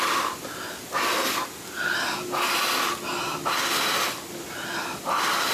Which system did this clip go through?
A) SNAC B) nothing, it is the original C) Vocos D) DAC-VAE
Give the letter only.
B